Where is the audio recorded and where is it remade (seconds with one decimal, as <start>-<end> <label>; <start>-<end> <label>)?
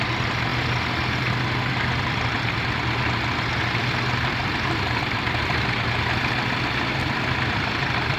0.0-0.5 remade; 0.5-3.8 recorded; 3.8-8.2 remade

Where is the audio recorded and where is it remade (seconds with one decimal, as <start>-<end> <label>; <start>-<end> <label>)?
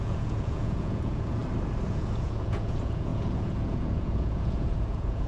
0.0-1.4 remade; 1.4-1.9 recorded; 1.9-5.3 remade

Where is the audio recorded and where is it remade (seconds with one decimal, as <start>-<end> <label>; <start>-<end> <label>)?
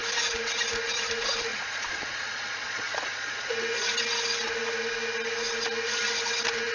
0.0-1.5 recorded; 1.5-3.5 remade; 3.5-6.7 recorded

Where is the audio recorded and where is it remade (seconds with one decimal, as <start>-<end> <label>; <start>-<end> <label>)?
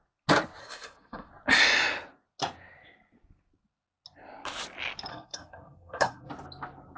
0.0-0.6 recorded; 0.6-1.3 remade; 1.3-5.1 recorded; 5.1-6.3 remade; 6.3-7.0 recorded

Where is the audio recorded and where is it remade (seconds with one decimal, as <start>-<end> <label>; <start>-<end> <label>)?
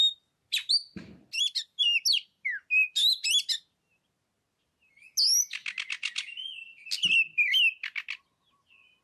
0.0-9.0 recorded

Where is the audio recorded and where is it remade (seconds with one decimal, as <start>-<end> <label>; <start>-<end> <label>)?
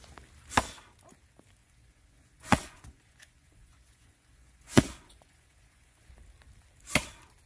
0.0-1.6 recorded; 1.6-6.1 remade; 6.1-7.5 recorded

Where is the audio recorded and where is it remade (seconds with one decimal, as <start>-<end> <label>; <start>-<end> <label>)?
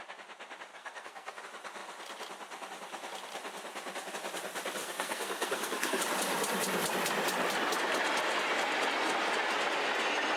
0.0-0.7 recorded; 0.7-1.4 remade; 1.4-4.8 recorded; 4.8-6.0 remade; 6.0-10.4 recorded